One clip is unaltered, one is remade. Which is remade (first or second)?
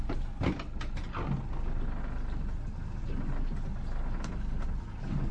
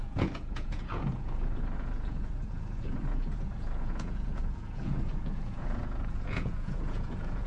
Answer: second